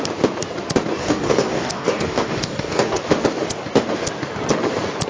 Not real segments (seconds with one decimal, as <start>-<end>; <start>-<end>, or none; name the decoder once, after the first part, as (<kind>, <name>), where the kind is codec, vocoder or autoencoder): 1.0-3.0 (codec, DAC)